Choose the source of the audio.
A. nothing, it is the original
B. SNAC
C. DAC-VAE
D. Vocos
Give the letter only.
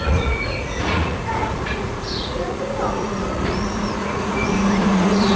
D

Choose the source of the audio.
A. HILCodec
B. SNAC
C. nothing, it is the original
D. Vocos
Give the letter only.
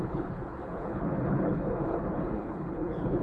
A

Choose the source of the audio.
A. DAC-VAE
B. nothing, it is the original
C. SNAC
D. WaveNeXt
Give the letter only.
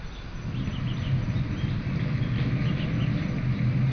B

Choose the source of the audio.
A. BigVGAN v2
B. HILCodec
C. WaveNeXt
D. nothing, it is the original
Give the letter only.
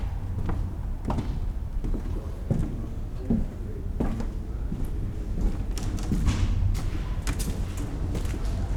D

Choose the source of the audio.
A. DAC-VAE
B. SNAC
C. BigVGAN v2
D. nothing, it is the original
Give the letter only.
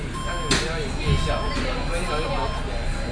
D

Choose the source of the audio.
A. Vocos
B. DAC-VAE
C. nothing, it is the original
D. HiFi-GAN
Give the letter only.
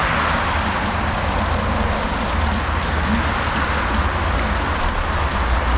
C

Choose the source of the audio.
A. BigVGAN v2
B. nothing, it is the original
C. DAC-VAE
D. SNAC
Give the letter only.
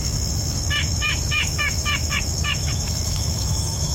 C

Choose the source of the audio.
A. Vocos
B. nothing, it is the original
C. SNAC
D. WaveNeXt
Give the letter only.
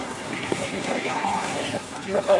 C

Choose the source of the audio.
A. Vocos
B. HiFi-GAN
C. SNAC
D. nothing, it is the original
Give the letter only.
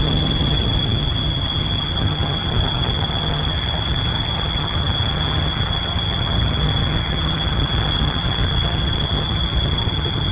B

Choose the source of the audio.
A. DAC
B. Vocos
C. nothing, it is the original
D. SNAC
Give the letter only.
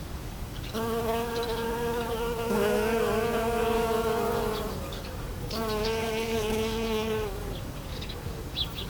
A